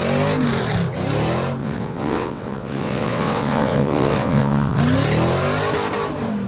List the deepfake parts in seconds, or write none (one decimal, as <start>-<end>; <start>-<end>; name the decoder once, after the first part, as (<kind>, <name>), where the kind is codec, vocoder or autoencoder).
1.6-4.8 (vocoder, WaveNeXt)